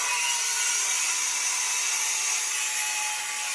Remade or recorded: recorded